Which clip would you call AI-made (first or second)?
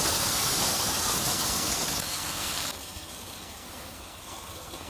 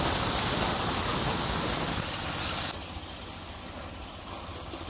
first